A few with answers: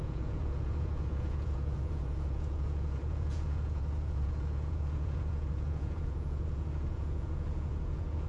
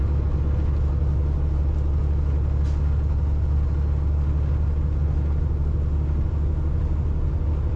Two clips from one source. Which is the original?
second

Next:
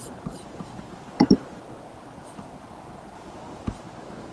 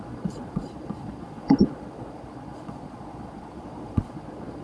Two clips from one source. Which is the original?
first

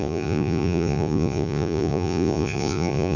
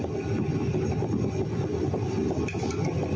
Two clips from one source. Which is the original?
second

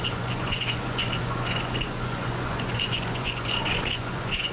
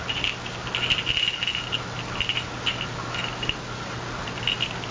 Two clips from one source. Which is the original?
second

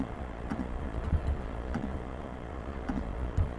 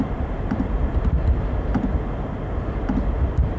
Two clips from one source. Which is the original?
second